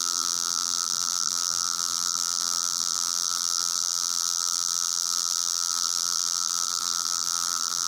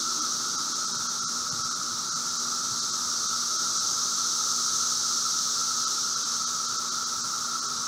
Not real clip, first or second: first